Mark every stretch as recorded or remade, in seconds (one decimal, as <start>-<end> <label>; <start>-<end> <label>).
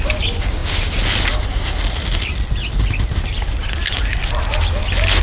0.0-5.2 recorded